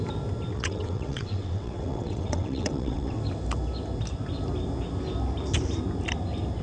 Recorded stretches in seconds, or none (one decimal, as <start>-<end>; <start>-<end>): 0.0-0.5; 3.2-6.6